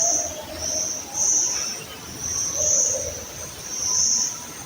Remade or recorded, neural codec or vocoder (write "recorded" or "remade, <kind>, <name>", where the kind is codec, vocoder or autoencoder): recorded